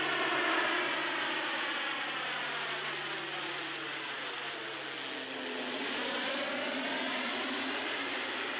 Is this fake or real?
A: real